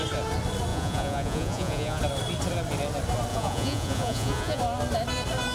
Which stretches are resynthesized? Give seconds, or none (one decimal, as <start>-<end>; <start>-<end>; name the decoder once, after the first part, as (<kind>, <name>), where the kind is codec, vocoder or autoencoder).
0.7-2.0 (vocoder, Vocos); 3.3-4.6